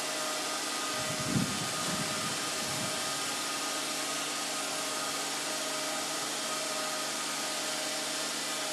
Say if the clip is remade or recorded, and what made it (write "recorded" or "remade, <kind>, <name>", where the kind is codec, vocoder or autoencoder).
recorded